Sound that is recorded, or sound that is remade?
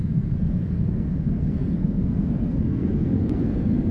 remade